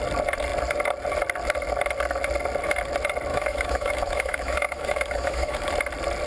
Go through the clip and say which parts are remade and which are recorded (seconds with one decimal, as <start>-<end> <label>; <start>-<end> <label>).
0.0-3.3 recorded; 3.3-5.7 remade; 5.7-6.3 recorded